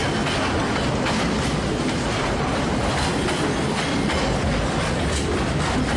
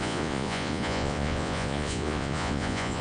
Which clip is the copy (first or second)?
second